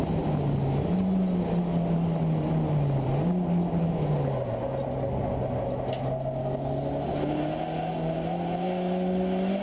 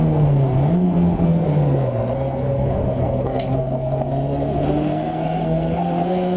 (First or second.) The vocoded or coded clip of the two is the second